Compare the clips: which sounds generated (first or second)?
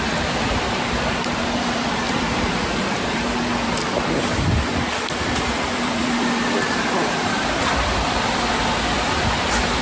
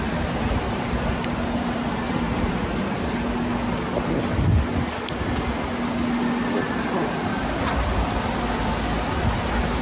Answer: first